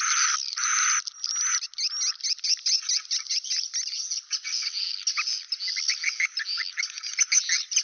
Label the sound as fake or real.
real